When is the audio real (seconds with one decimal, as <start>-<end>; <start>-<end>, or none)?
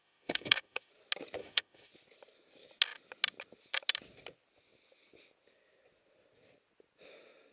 0.9-1.4; 1.9-7.5